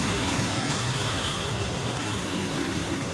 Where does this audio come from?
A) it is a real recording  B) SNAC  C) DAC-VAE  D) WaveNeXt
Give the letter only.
B